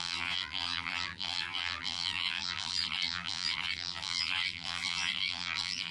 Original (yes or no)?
no